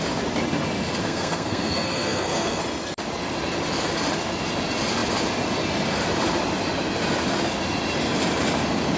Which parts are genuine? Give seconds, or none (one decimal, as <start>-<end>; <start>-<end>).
0.0-1.0; 2.6-9.0